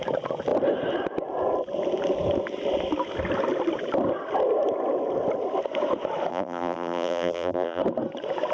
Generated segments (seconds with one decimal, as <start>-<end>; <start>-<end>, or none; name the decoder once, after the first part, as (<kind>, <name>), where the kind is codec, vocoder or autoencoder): 6.3-7.8 (vocoder, BigVGAN v2)

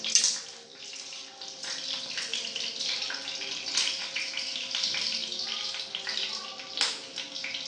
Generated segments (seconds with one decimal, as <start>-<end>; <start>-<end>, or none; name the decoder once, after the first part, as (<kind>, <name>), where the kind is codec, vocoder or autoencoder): 0.7-3.4 (vocoder, BigVGAN v2)

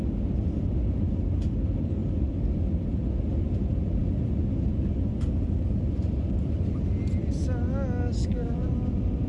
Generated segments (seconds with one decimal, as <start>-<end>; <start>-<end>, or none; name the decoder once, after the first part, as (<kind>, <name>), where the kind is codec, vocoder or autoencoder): 8.2-8.7 (vocoder, BigVGAN v2)

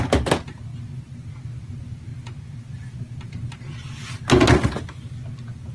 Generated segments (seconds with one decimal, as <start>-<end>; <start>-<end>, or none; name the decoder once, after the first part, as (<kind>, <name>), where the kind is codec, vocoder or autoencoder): none

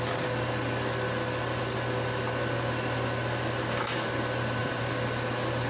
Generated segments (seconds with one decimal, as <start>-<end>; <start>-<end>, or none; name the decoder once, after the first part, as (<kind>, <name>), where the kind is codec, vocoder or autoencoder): none

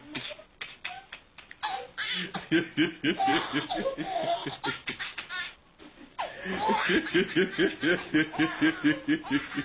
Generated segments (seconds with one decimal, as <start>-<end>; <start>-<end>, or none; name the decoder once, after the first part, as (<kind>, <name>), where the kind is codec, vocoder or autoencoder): 3.3-5.6 (vocoder, BigVGAN v2)